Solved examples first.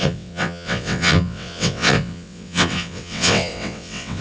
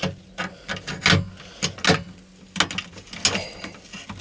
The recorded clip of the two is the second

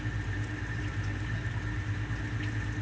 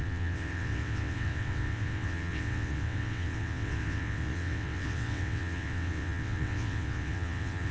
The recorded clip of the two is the first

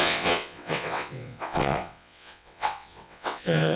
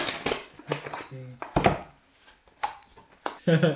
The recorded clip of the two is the second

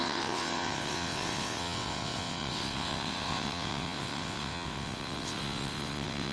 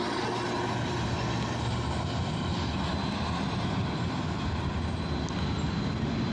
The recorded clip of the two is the second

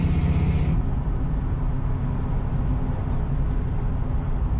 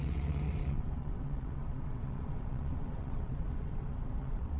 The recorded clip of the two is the first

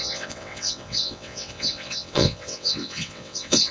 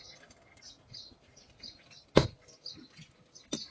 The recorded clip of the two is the second